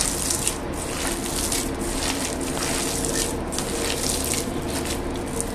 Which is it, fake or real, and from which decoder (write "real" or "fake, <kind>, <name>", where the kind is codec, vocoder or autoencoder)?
real